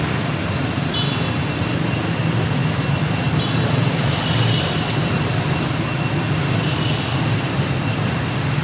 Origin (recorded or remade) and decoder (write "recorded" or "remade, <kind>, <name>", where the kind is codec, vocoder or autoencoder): recorded